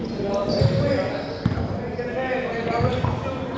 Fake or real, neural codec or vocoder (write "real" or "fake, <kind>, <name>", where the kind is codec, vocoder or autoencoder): real